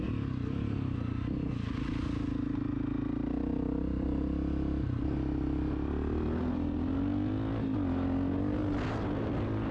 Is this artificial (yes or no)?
no